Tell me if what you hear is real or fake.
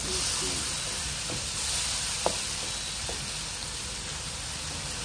real